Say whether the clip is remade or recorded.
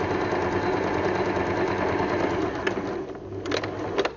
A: recorded